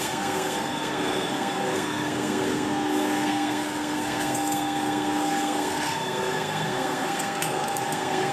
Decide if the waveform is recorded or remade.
remade